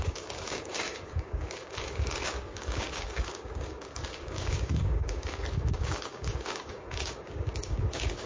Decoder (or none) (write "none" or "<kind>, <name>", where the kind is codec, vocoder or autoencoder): codec, DAC